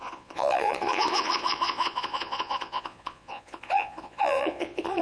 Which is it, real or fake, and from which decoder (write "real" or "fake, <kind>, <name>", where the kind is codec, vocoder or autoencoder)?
fake, vocoder, Vocos